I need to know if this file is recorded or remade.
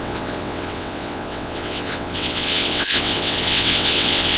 remade